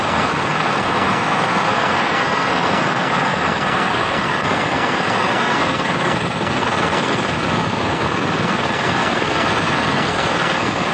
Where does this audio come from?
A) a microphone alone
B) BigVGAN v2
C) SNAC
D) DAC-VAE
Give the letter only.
C